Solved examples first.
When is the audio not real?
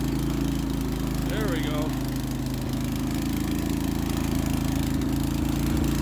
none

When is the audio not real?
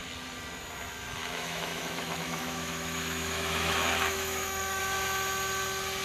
1.2-4.8 (autoencoder, DAC-VAE)